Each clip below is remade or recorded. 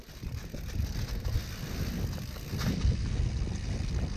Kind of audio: recorded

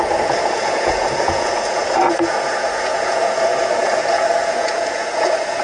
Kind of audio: remade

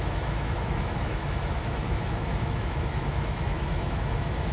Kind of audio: remade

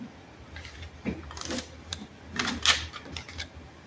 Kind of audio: recorded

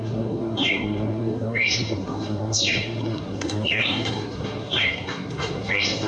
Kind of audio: remade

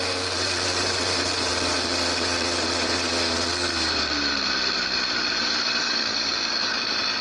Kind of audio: remade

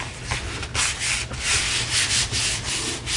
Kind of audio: recorded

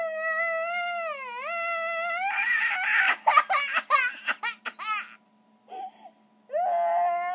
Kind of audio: recorded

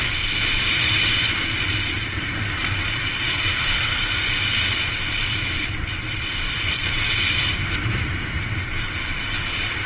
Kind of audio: remade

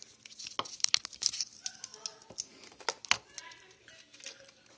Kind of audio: recorded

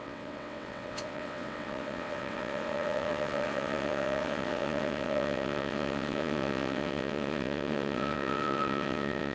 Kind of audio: remade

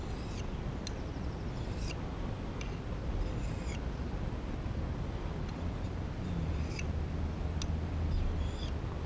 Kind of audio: recorded